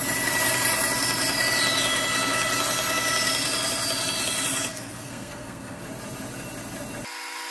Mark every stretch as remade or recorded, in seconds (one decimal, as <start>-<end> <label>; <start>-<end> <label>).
0.0-4.7 recorded; 4.7-5.8 remade; 5.8-7.5 recorded

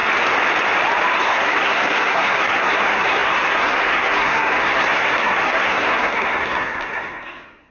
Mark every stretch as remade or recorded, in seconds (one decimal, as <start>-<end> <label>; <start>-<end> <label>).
0.0-1.2 recorded; 1.2-7.7 remade

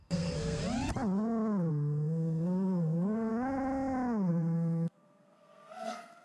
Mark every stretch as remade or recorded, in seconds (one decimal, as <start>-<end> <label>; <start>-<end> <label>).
0.0-0.6 remade; 0.6-1.7 recorded; 1.7-3.3 remade; 3.3-4.3 recorded; 4.3-6.2 remade

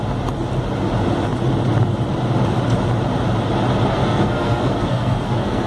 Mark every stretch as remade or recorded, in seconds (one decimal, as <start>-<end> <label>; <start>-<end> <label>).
0.0-3.9 recorded; 3.9-5.7 remade

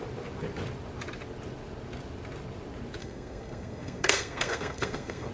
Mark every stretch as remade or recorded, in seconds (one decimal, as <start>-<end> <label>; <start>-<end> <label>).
0.0-3.0 recorded; 3.0-5.3 remade

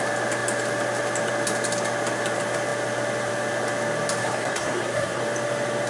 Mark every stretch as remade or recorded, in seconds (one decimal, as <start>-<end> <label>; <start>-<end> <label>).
0.0-4.2 recorded; 4.2-5.2 remade; 5.2-5.9 recorded

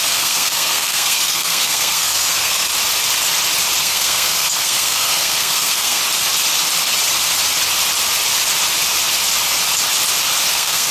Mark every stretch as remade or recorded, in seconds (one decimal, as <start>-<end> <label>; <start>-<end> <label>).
0.0-2.7 remade; 2.7-3.8 recorded; 3.8-6.0 remade; 6.0-10.5 recorded; 10.5-10.9 remade

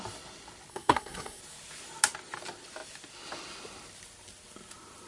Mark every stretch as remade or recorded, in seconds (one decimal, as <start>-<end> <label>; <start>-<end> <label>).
0.0-0.7 recorded; 0.7-1.4 remade; 1.4-5.1 recorded